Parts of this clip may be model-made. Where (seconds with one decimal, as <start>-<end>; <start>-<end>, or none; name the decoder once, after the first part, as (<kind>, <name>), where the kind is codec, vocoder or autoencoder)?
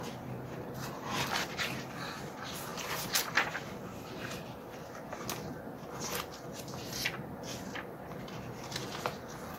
none